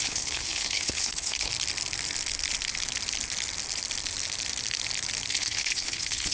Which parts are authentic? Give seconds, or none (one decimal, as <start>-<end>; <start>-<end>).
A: 1.5-5.3